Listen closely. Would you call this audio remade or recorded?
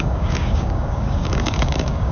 remade